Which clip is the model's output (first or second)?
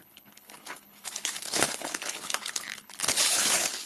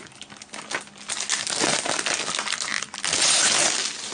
first